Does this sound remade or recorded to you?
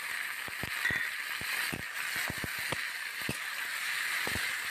recorded